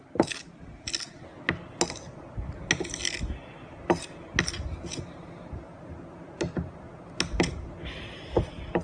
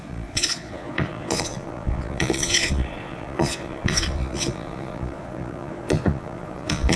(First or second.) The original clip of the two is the first